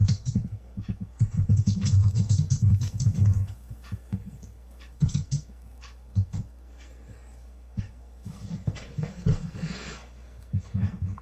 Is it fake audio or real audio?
fake